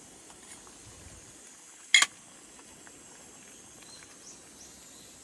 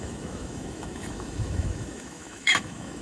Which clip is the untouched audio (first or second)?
first